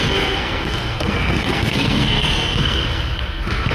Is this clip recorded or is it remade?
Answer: remade